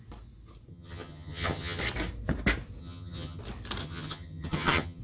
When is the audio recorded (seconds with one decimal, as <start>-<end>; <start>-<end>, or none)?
0.0-0.7; 1.8-2.8; 3.4-3.8